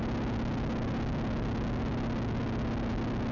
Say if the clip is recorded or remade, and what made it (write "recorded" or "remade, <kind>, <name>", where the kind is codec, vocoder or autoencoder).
recorded